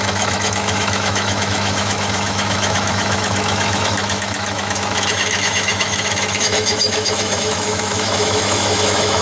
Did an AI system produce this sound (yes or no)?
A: yes